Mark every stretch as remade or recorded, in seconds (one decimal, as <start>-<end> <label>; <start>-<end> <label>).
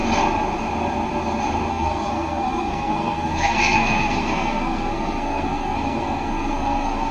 0.0-1.7 recorded; 1.7-7.1 remade